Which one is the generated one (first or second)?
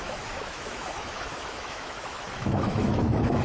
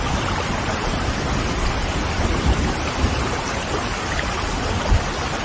first